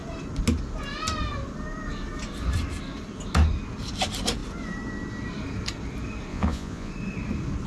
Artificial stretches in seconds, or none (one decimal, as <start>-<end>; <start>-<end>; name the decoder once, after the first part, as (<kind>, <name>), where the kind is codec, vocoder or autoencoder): 6.3-6.9 (vocoder, Vocos)